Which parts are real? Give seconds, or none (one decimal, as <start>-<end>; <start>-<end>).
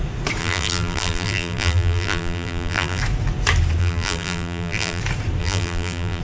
0.0-0.4; 3.0-3.8; 5.0-5.4